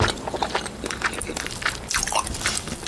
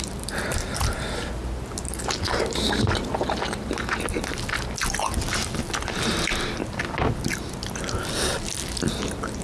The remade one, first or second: first